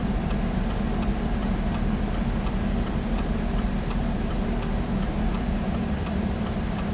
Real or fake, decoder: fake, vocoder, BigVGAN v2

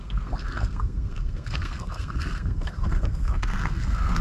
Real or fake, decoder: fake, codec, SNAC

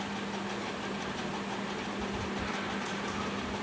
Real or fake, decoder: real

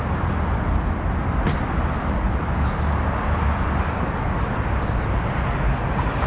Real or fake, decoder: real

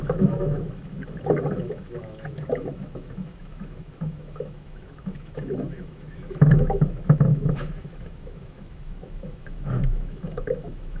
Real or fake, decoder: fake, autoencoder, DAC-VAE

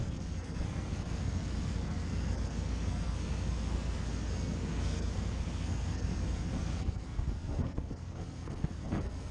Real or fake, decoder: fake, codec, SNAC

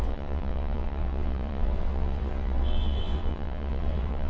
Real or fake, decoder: fake, vocoder, WaveNeXt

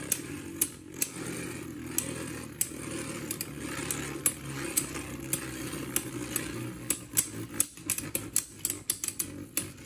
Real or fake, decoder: real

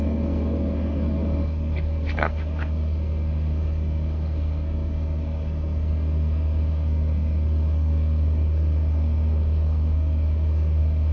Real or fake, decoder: fake, codec, SNAC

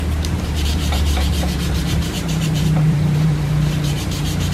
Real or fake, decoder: fake, vocoder, BigVGAN v2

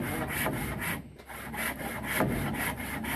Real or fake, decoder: real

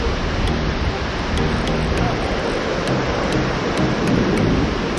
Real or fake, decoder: real